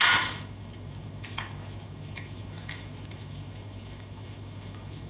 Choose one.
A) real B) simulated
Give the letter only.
B